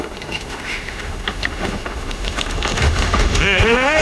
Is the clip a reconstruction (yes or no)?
yes